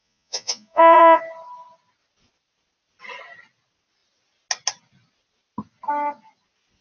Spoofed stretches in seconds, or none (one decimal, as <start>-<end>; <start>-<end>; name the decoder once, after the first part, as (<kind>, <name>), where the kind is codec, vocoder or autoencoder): 0.0-1.2 (vocoder, Vocos)